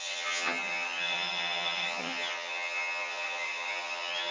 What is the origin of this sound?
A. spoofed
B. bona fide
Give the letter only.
A